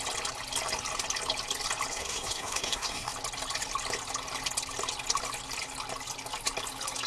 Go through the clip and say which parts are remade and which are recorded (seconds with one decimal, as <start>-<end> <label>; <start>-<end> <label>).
0.0-1.9 recorded; 1.9-3.1 remade; 3.1-7.1 recorded